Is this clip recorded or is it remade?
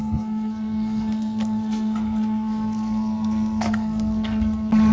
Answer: remade